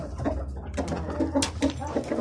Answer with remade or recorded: recorded